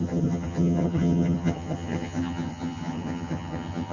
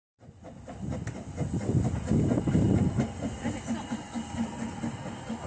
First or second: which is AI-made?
first